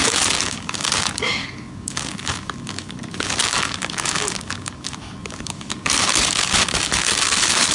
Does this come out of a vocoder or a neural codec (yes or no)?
yes